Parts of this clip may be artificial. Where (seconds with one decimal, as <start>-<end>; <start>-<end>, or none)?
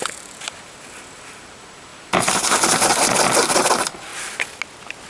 none